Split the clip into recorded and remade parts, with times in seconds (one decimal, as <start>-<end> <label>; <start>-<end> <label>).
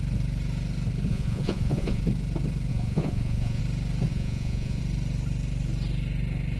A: 0.0-1.1 recorded; 1.1-2.0 remade; 2.0-2.7 recorded; 2.7-3.6 remade; 3.6-4.1 recorded; 4.1-4.8 remade; 4.8-6.6 recorded